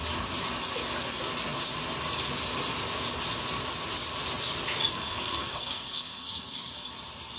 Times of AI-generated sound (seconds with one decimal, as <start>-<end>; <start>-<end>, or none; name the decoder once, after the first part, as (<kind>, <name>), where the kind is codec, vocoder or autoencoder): 4.8-6.9 (codec, SNAC)